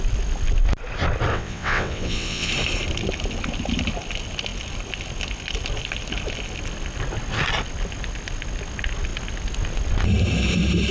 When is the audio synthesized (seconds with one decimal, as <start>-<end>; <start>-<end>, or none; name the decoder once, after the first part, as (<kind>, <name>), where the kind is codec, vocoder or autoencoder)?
1.3-2.5 (vocoder, WaveNeXt)